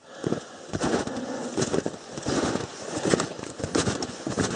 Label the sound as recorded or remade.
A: remade